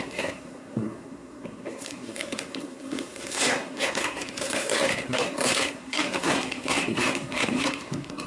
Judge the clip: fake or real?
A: fake